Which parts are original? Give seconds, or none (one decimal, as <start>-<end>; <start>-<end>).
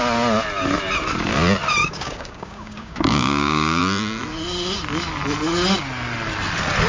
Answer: 0.0-1.8; 3.8-6.9